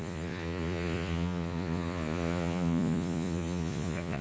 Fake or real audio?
fake